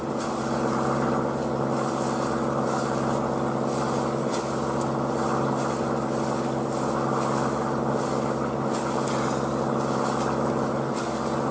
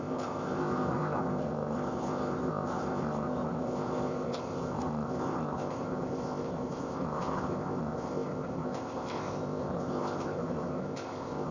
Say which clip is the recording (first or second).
first